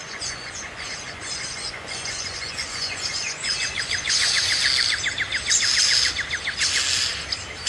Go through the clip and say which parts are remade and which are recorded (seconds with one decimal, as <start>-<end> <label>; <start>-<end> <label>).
0.0-4.6 remade; 4.6-7.7 recorded